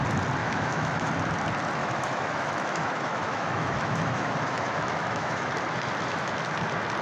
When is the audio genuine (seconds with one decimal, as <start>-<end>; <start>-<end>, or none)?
0.0-0.4; 1.1-1.8; 5.5-7.0